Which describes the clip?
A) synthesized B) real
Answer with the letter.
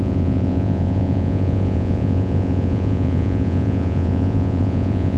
A